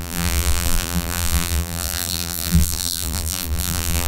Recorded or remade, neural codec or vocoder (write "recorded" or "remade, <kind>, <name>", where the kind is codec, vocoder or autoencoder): remade, vocoder, BigVGAN v2